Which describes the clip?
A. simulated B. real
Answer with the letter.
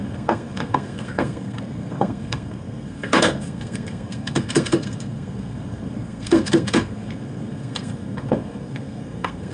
A